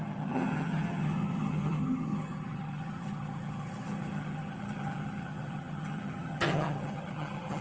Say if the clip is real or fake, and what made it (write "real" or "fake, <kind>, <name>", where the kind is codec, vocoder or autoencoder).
fake, vocoder, HiFi-GAN